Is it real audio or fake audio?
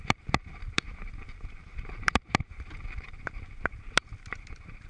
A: fake